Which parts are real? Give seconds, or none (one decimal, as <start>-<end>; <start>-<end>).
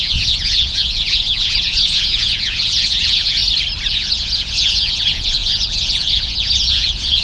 3.4-3.9